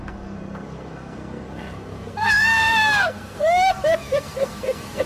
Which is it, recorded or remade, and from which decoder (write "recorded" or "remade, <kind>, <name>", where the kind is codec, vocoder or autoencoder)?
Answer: remade, codec, SNAC